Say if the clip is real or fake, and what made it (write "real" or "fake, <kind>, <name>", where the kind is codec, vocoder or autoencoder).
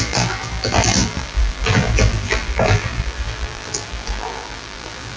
fake, vocoder, BigVGAN v2